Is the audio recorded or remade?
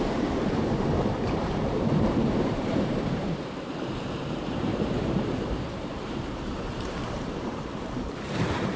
remade